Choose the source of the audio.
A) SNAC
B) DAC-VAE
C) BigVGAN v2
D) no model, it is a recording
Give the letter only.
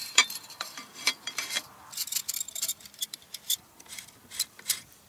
C